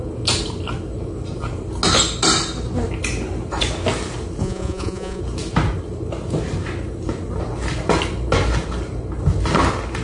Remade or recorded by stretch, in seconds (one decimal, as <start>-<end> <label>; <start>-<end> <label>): 0.0-4.4 recorded; 4.4-5.2 remade; 5.2-10.0 recorded